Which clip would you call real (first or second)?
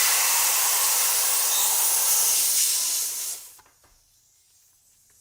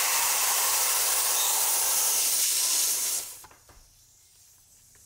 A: first